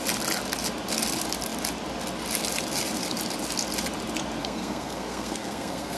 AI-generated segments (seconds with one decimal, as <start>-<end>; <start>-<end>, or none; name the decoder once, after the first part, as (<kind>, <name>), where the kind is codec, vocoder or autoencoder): 4.4-6.0 (codec, SNAC)